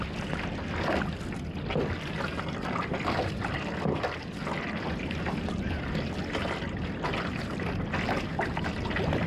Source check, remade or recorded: recorded